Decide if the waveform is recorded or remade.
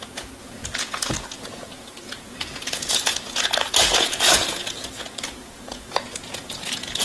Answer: remade